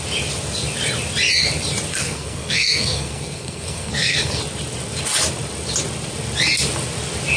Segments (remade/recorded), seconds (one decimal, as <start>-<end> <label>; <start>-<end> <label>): 0.0-1.9 recorded; 1.9-4.4 remade; 4.4-7.4 recorded